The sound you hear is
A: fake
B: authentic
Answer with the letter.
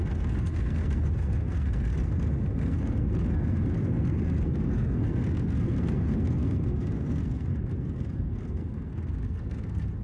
A